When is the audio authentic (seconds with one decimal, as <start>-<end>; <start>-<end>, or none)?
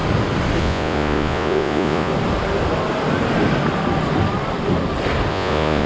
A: 0.0-0.6; 2.1-5.3